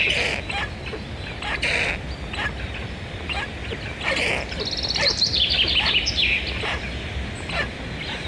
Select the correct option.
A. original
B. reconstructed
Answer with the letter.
A